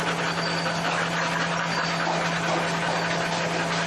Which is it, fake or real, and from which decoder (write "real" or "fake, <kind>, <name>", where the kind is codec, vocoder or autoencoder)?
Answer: real